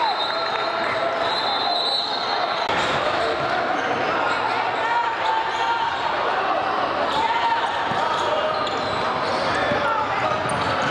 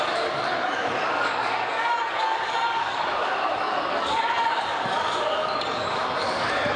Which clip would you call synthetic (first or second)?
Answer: second